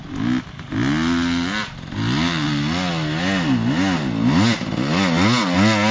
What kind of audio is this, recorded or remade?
recorded